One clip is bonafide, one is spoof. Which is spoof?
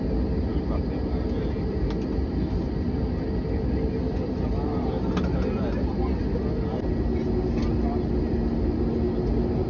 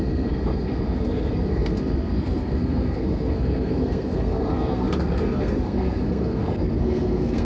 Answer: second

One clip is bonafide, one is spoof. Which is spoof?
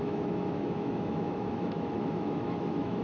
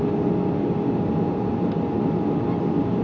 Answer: first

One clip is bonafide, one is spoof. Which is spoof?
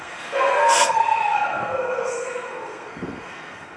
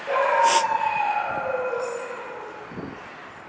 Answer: first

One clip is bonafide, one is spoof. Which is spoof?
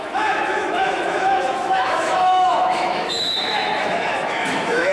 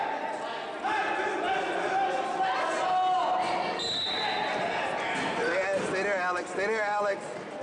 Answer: first